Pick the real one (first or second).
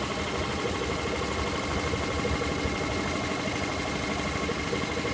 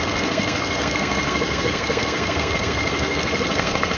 first